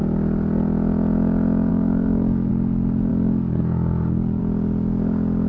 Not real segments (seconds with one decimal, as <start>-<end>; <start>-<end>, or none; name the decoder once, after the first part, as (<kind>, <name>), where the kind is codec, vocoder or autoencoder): 1.7-2.5 (codec, DAC); 3.1-4.4